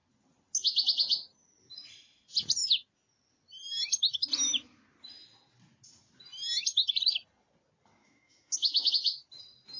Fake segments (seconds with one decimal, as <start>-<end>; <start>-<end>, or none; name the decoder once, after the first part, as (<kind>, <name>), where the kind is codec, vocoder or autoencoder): 8.0-8.9 (autoencoder, DAC-VAE)